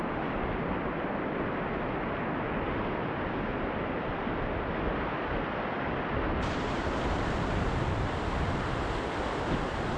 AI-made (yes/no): no